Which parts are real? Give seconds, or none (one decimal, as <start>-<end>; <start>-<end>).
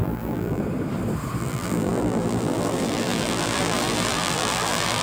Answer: 0.6-1.4